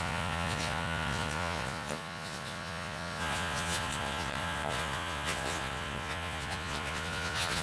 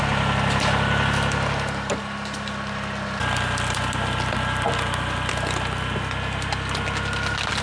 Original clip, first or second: second